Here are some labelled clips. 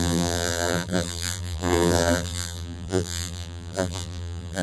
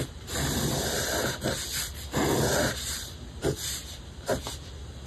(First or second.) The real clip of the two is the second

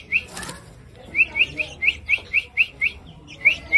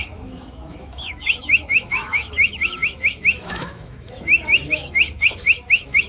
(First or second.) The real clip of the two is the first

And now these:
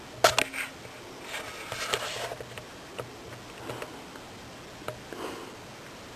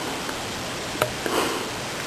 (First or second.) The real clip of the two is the first